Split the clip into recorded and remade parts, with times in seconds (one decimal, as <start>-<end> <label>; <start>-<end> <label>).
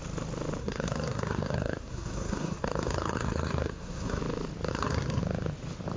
0.0-0.6 recorded; 0.6-4.2 remade; 4.2-4.7 recorded; 4.7-5.2 remade; 5.2-6.0 recorded